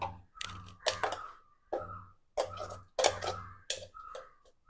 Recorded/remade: recorded